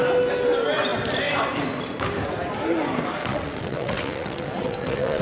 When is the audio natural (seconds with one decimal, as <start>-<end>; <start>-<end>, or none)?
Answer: 0.0-3.2